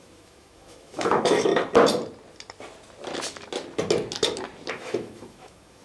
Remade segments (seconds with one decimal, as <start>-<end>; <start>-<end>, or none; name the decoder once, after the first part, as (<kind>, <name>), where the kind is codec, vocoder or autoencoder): 0.0-1.5 (autoencoder, DAC-VAE); 4.7-5.8